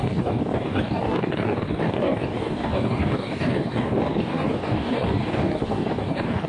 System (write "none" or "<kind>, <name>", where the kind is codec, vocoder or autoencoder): codec, DAC